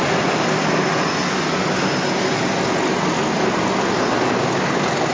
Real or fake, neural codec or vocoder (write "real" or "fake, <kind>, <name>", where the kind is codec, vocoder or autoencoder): real